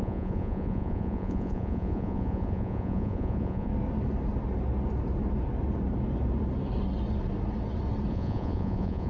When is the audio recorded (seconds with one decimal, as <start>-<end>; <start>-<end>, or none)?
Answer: 3.7-8.1